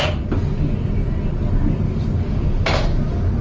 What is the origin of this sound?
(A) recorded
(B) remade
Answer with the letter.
A